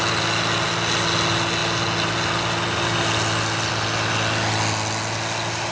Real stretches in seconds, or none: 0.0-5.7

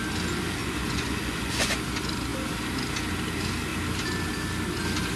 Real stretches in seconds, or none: 0.0-0.6; 1.7-5.2

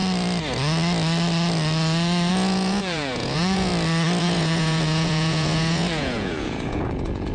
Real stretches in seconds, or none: 0.0-2.3; 3.7-4.2

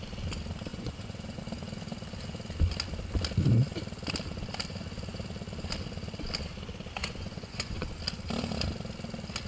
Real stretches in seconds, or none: 0.0-0.7; 1.4-7.0; 7.9-9.5

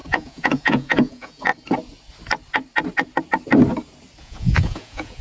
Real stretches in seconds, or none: 1.5-4.2

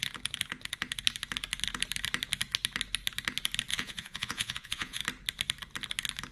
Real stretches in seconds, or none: 0.0-3.7; 5.0-6.3